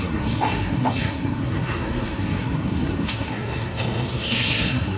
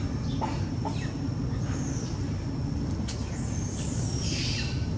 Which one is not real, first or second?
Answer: first